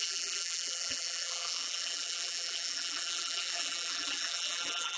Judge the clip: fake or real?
fake